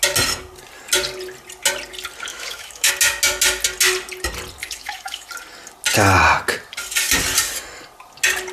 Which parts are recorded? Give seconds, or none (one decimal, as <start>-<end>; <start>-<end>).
0.0-2.3; 2.9-4.6; 5.3-8.5